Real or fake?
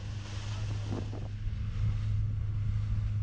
real